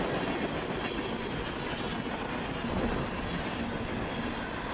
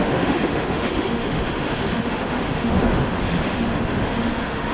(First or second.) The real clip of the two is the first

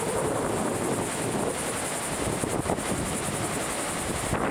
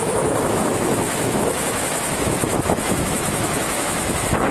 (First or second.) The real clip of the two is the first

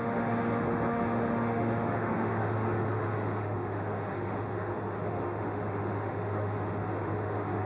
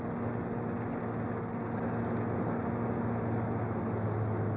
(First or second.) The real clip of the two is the second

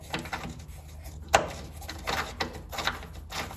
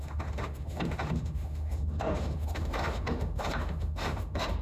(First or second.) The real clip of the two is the first